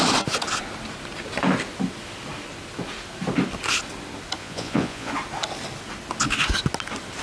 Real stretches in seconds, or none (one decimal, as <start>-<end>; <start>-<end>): 0.0-4.4; 5.1-7.2